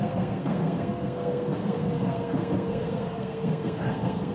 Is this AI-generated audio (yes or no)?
yes